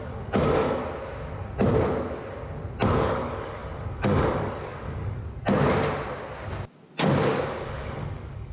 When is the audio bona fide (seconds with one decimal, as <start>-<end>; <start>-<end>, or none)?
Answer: 0.8-3.0; 5.2-7.6